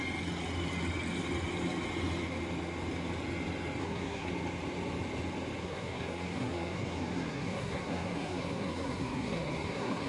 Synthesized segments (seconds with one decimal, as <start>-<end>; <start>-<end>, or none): 3.8-4.3; 5.6-10.1